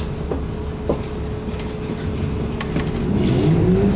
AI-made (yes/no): no